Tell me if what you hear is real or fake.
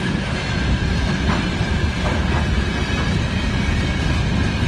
real